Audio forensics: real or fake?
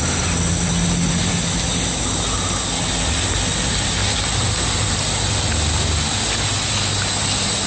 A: real